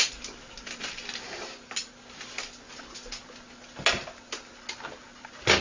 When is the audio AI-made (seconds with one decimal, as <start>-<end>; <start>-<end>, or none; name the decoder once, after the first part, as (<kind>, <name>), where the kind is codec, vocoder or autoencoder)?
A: none